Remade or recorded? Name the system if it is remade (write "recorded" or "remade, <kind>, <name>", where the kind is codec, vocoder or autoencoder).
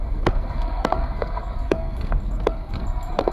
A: remade, codec, SNAC